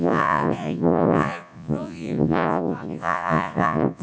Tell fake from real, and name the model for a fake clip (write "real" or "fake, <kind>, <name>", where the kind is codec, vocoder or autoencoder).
fake, vocoder, Vocos